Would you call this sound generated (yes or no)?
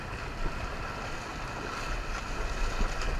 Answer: no